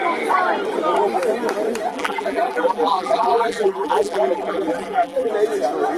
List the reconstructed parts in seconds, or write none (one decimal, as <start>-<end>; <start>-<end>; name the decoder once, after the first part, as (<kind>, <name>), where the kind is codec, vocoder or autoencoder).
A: 1.9-5.3 (vocoder, BigVGAN v2)